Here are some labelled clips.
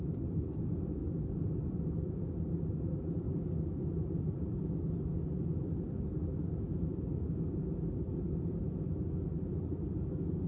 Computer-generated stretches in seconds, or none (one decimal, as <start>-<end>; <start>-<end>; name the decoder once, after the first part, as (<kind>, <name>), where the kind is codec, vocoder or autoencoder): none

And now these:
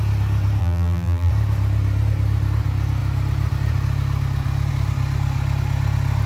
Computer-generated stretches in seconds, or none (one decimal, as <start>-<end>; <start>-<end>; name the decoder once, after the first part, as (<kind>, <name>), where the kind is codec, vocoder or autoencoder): 0.6-1.3 (vocoder, BigVGAN v2)

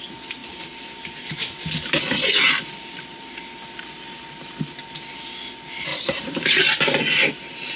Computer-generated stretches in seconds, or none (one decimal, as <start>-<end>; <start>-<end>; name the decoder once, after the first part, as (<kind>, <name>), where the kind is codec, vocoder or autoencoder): 5.9-7.0 (vocoder, BigVGAN v2)

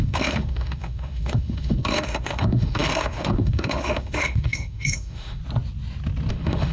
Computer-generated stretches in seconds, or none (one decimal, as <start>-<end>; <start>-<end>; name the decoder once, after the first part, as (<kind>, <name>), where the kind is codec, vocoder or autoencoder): 0.0-5.4 (autoencoder, DAC-VAE); 6.3-6.7

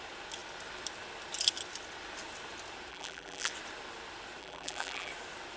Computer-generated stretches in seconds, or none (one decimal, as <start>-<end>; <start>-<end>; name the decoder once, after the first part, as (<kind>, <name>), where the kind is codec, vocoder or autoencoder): 2.9-3.5 (vocoder, BigVGAN v2); 4.4-5.1